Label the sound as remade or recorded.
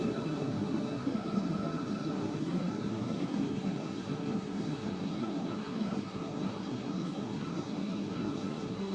remade